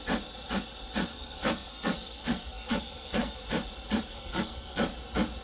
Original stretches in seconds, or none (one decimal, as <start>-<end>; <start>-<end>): 0.0-1.1; 3.4-4.1; 4.8-5.4